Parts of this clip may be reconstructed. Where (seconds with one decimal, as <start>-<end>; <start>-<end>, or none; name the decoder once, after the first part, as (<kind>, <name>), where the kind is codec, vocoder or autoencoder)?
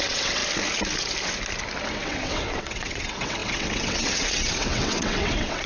0.0-0.4 (vocoder, WaveNeXt); 1.9-5.7